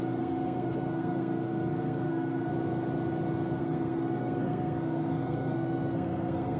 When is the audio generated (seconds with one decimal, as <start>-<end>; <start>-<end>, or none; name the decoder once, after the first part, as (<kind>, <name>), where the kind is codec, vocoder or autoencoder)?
0.0-2.5 (codec, SNAC); 3.6-6.6